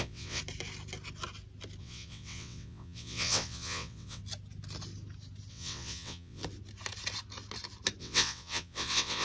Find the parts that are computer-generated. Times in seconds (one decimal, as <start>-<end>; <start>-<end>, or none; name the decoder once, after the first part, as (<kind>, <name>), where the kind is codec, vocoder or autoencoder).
0.0-0.4 (vocoder, WaveNeXt); 1.8-4.2; 5.5-6.4; 8.0-9.2